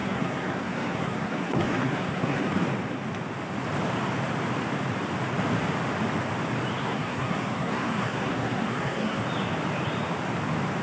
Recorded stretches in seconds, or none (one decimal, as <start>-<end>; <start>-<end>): 2.5-6.8; 9.2-10.8